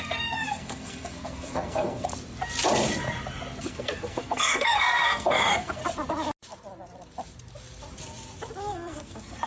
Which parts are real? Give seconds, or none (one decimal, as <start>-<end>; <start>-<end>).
2.1-3.6; 5.8-8.6